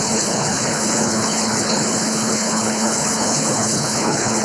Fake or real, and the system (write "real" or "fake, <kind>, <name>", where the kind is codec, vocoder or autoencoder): fake, codec, HILCodec